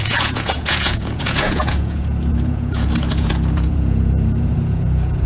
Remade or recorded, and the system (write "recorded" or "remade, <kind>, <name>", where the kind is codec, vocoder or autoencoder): remade, vocoder, Vocos